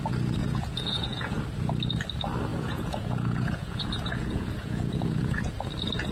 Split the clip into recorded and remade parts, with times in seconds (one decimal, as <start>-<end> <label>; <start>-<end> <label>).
0.0-0.4 recorded; 0.4-1.4 remade; 1.4-2.5 recorded; 2.5-5.6 remade; 5.6-6.1 recorded